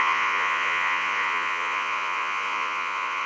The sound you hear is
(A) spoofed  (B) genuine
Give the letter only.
A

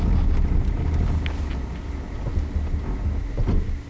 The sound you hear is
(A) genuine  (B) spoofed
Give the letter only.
A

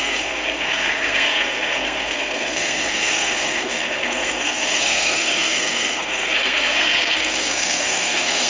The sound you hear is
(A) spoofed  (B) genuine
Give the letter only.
A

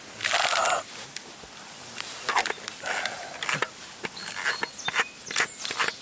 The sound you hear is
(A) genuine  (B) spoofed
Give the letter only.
A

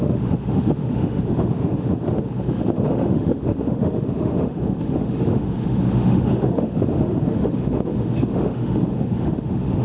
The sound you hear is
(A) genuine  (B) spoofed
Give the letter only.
B